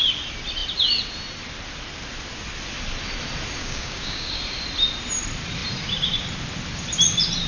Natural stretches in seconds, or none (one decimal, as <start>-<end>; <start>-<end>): 0.0-3.6; 4.4-7.5